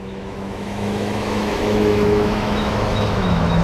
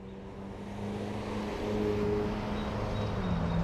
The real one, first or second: second